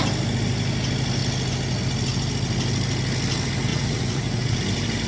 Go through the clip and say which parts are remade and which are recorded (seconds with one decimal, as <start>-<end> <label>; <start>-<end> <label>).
0.0-3.7 recorded; 3.7-4.6 remade; 4.6-5.1 recorded